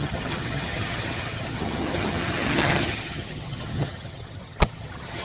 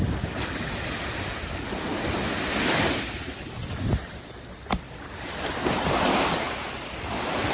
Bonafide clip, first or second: second